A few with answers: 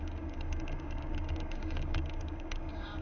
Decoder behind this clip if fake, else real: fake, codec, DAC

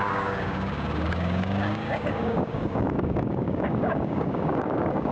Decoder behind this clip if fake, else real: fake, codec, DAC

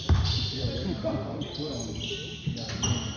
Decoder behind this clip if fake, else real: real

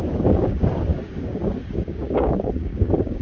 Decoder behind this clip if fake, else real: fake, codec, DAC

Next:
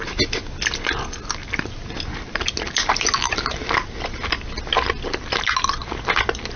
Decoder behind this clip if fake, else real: real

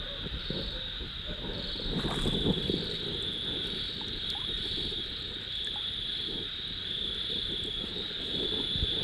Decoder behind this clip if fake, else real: real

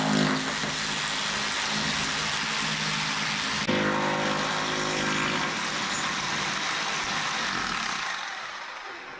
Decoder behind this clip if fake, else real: real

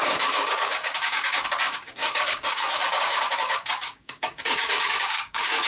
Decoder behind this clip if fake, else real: fake, codec, DAC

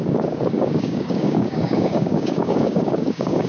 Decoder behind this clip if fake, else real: fake, codec, DAC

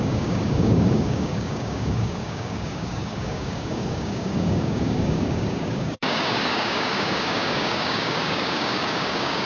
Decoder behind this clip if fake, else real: fake, codec, DAC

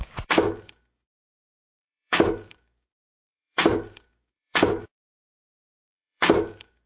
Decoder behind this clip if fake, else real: fake, codec, DAC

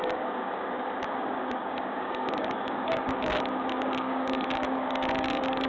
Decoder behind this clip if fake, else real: fake, codec, DAC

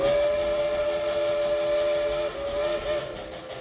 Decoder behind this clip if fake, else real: real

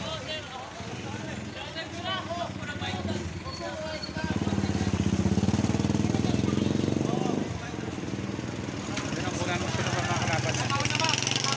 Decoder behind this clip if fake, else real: real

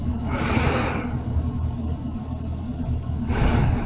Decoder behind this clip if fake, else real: fake, codec, DAC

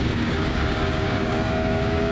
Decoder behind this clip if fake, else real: fake, codec, DAC